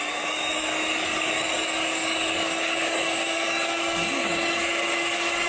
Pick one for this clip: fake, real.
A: fake